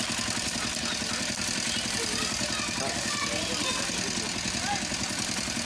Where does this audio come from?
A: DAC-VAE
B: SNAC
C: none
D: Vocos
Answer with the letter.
C